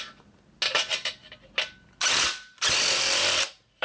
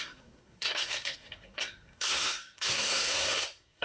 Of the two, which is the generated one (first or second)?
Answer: second